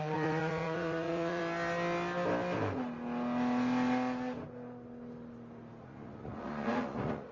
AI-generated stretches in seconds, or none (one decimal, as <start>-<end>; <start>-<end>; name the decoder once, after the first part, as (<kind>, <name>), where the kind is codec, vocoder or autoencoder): 0.0-1.4 (vocoder, Vocos); 5.8-7.3